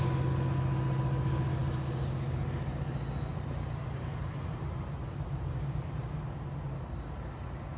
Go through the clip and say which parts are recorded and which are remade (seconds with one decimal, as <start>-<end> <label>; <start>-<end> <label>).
0.0-3.3 recorded; 3.3-6.0 remade; 6.0-7.8 recorded